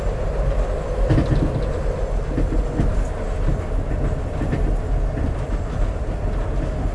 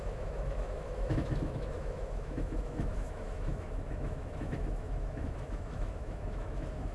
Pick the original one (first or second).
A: first